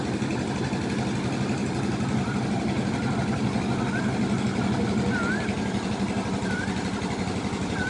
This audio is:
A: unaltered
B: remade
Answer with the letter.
A